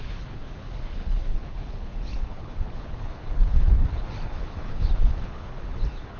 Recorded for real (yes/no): no